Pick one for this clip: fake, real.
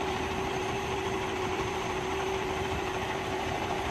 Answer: fake